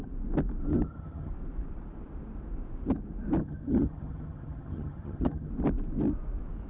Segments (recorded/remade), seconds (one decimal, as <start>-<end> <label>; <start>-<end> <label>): 0.0-0.7 recorded; 0.7-1.3 remade; 1.3-3.4 recorded; 3.4-5.5 remade; 5.5-6.7 recorded